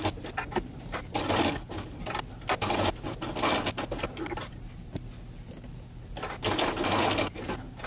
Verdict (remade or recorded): recorded